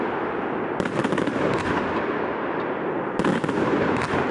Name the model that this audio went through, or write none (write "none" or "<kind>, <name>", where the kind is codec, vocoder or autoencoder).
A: none